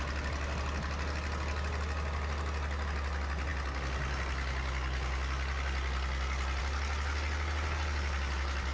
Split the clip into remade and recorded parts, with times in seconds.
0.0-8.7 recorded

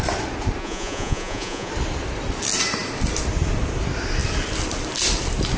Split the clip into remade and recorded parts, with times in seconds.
0.0-0.6 recorded; 0.6-1.7 remade; 1.7-5.6 recorded

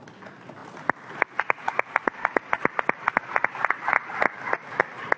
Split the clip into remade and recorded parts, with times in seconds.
0.0-5.2 recorded

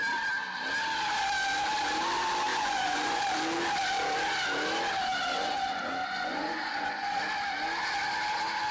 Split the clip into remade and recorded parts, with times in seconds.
0.0-2.5 recorded; 2.5-3.2 remade; 3.2-5.3 recorded; 5.3-7.2 remade; 7.2-8.7 recorded

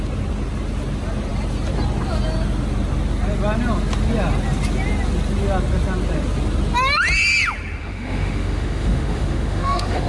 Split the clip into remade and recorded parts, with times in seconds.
0.0-7.8 recorded; 7.8-10.1 remade

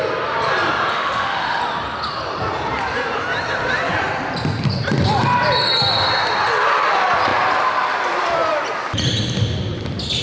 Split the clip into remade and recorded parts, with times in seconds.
0.0-0.9 recorded; 0.9-1.6 remade; 1.6-10.2 recorded